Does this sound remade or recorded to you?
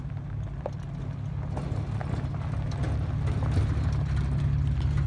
recorded